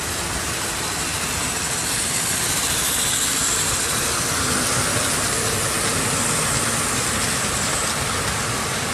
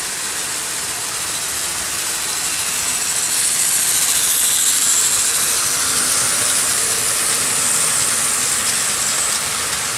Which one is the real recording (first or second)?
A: second